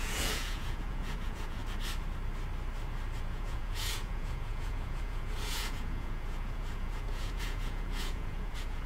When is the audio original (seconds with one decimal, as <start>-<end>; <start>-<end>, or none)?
1.6-3.2